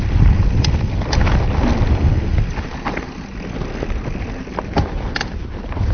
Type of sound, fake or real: real